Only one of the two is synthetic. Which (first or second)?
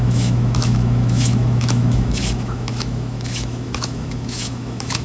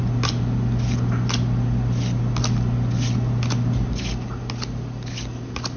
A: first